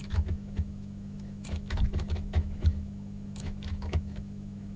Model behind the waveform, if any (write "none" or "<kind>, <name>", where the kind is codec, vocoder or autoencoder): autoencoder, DAC-VAE